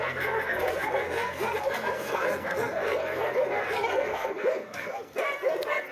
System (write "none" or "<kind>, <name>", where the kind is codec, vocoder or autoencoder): codec, SNAC